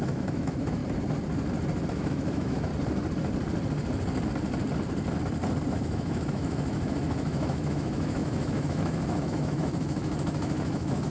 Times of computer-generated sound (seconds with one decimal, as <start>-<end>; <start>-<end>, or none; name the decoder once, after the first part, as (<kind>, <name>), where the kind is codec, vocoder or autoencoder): 0.0-0.8 (autoencoder, DAC-VAE); 1.9-2.7; 5.7-11.1

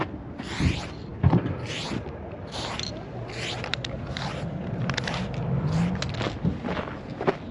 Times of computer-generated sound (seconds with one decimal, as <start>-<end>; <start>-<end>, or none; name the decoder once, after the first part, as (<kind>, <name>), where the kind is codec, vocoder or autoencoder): none

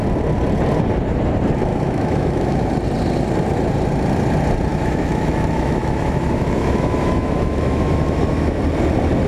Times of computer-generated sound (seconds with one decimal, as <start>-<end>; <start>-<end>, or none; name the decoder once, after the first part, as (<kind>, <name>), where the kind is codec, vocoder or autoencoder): 1.7-2.7 (autoencoder, DAC-VAE); 4.7-8.6

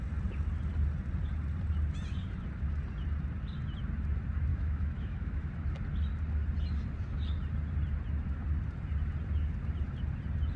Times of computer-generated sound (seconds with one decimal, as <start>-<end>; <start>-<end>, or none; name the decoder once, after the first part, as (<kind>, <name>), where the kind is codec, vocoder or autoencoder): 4.5-5.5 (autoencoder, DAC-VAE)